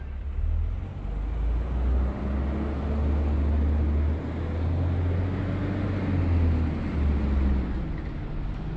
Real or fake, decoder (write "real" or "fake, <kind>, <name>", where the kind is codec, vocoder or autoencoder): real